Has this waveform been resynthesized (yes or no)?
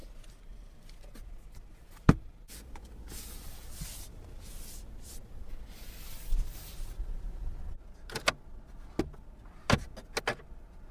no